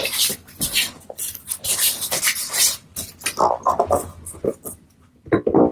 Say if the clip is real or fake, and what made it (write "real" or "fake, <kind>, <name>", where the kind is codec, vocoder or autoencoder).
real